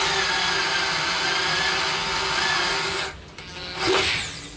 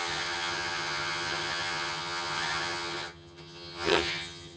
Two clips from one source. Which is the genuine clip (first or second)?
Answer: first